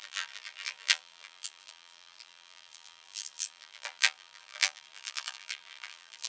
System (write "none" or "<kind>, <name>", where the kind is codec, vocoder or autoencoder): vocoder, BigVGAN v2